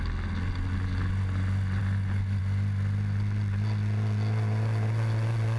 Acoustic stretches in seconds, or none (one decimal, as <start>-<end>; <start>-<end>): 0.0-5.6